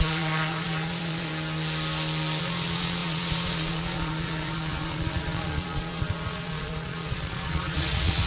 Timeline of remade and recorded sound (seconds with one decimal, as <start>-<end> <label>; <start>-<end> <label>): 0.0-1.3 remade; 1.3-2.4 recorded; 2.4-8.3 remade